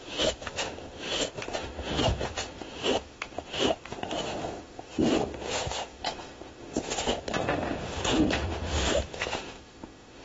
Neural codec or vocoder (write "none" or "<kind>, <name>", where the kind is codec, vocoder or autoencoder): autoencoder, DAC-VAE